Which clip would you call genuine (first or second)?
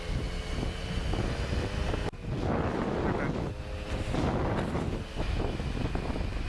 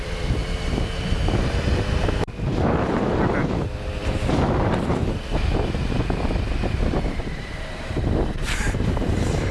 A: first